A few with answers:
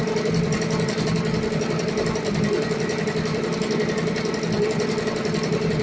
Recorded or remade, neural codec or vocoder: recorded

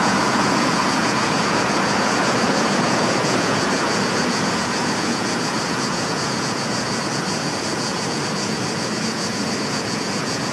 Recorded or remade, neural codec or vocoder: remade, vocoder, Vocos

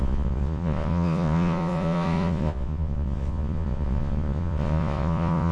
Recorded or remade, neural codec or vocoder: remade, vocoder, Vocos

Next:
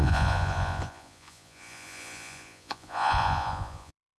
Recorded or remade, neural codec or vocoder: remade, vocoder, Vocos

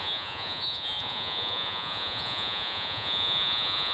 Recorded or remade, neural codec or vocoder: remade, vocoder, Vocos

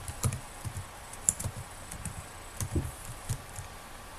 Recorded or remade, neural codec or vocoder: recorded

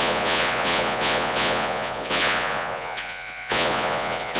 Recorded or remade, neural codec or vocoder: remade, vocoder, Vocos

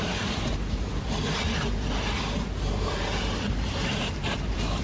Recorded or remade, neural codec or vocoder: recorded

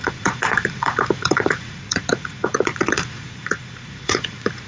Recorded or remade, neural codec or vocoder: remade, vocoder, Vocos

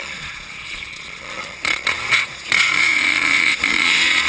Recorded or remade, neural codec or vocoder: remade, vocoder, Vocos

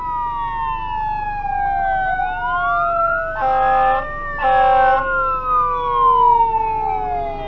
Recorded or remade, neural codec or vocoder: recorded